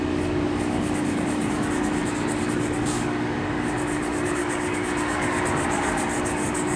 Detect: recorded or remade remade